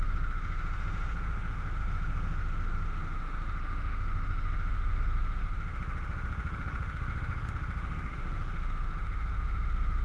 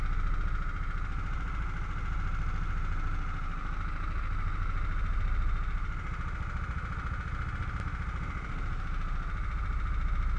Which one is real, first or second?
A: second